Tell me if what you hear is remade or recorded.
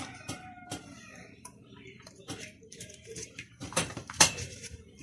remade